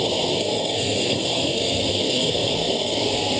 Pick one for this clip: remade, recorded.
remade